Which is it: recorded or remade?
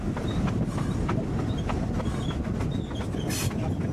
recorded